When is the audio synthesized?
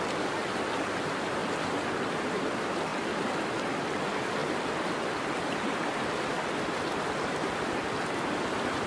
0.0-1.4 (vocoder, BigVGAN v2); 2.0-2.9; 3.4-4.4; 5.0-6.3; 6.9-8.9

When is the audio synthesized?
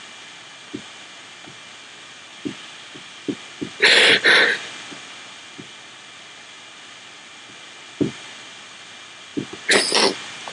2.3-3.3 (vocoder, BigVGAN v2)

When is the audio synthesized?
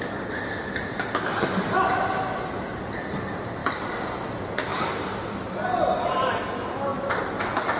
3.6-4.2 (vocoder, BigVGAN v2); 4.7-6.3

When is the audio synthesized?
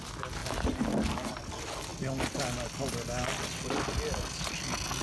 none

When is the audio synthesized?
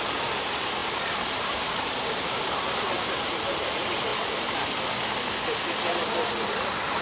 0.0-4.1 (vocoder, BigVGAN v2); 6.0-7.0